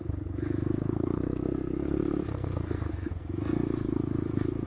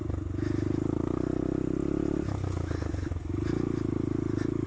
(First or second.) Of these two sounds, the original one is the second